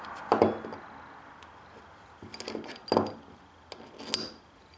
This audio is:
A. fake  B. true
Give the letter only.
B